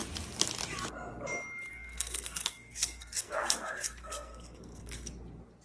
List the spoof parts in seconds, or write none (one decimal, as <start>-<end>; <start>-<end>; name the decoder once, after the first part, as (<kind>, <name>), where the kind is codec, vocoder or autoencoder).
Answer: 1.7-5.1 (codec, SNAC)